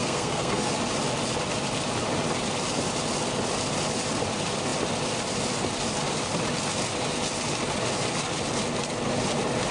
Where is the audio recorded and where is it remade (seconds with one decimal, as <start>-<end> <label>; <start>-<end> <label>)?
0.0-0.7 remade; 0.7-9.7 recorded